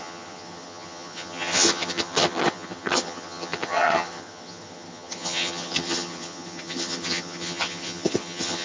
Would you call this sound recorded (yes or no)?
no